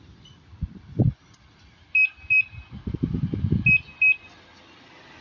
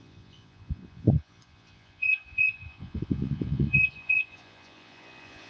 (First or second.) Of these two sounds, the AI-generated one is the second